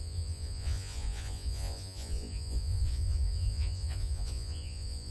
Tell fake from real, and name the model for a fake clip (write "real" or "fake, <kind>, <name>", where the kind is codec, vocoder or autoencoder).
fake, vocoder, Vocos